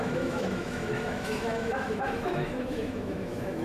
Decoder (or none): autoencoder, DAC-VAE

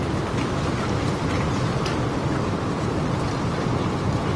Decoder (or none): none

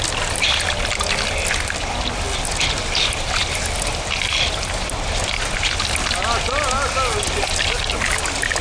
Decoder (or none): none